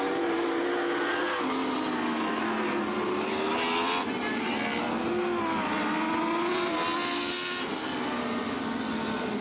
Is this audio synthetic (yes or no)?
no